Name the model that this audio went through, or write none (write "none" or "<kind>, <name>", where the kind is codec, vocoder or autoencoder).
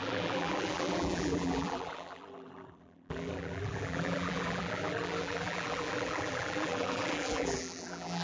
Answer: vocoder, BigVGAN v2